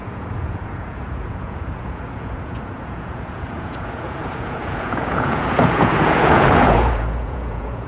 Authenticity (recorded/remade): remade